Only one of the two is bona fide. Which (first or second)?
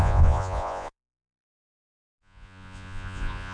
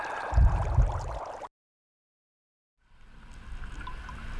second